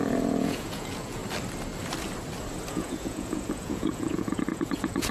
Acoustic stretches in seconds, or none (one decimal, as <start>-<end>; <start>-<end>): 1.2-2.7